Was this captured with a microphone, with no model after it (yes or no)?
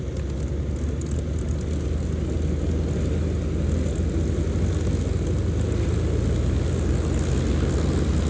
yes